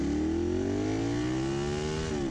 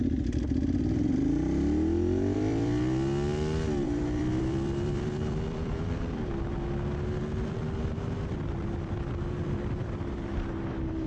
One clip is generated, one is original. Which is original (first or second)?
first